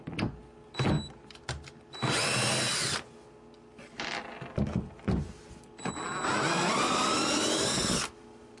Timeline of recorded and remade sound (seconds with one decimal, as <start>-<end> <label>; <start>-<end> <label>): 0.0-8.6 recorded